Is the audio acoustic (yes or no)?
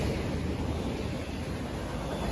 yes